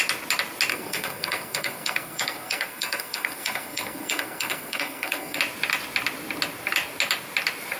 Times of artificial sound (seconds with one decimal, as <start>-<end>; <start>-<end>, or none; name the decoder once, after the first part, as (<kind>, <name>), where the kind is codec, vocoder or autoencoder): 0.7-5.4 (codec, SNAC)